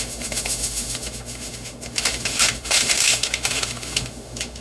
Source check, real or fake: fake